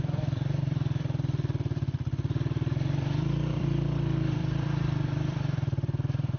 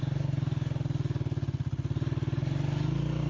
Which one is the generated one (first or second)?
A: first